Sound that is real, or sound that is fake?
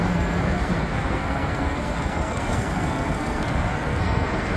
fake